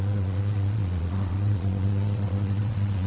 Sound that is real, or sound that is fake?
fake